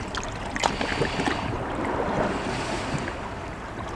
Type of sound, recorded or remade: recorded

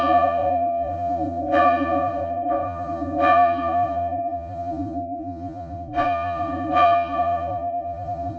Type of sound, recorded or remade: remade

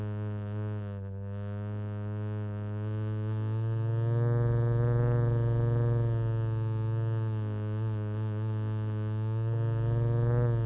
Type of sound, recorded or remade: recorded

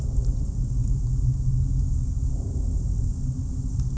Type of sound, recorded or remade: recorded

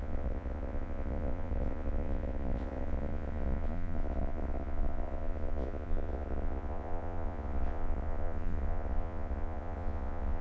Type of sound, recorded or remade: remade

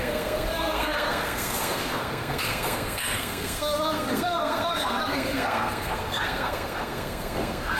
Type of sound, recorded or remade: remade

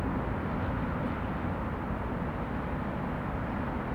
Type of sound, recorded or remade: recorded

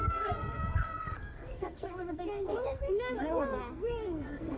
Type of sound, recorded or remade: remade